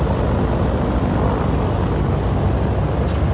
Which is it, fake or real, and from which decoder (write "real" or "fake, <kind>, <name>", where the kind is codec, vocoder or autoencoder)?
real